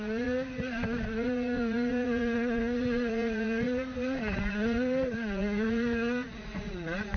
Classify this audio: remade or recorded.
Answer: remade